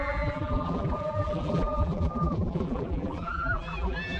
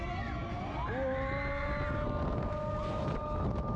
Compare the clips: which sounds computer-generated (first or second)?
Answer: first